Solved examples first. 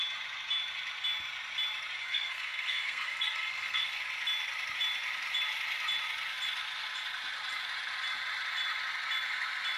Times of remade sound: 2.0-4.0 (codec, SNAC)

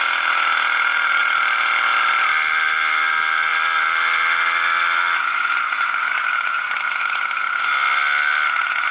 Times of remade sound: none

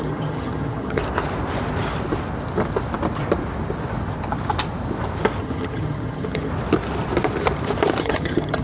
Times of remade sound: 0.0-1.0 (vocoder, HiFi-GAN); 5.4-6.5; 8.0-8.6